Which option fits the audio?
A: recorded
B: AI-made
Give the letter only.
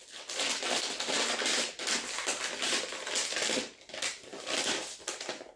A